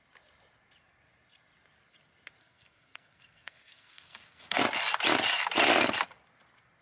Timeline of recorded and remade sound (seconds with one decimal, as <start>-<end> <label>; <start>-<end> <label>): 0.0-2.4 recorded; 2.4-4.6 remade; 4.6-6.8 recorded